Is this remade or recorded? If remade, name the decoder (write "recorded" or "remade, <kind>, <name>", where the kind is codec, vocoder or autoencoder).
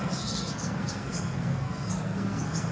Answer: remade, codec, SNAC